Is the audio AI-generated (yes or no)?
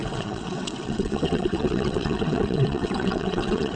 yes